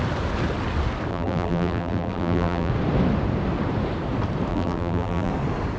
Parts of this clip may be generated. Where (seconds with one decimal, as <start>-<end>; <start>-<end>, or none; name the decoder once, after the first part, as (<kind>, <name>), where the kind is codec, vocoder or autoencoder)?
1.1-2.7 (vocoder, BigVGAN v2); 4.5-5.3